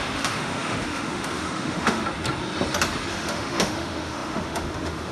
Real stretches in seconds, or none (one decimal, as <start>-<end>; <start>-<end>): 2.0-3.1